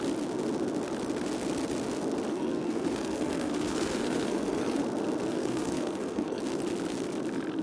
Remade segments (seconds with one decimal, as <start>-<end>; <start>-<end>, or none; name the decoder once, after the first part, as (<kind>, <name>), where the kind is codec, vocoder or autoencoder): 2.3-4.8 (codec, SNAC); 5.3-6.4